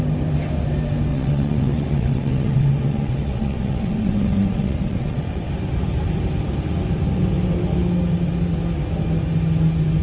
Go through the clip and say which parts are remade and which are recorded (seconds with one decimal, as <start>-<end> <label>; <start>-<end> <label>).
0.0-1.1 recorded; 1.1-5.5 remade; 5.5-10.0 recorded